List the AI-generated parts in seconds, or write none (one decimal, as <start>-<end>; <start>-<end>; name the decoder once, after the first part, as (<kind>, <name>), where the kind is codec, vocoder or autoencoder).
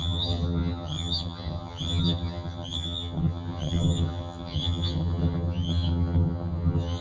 0.0-7.0 (vocoder, HiFi-GAN)